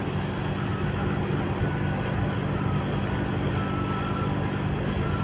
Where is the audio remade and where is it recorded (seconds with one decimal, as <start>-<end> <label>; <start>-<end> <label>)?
0.0-5.2 recorded